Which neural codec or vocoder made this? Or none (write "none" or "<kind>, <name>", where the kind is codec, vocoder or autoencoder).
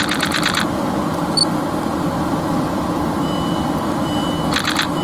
none